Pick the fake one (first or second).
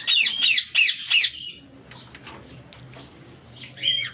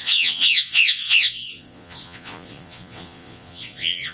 second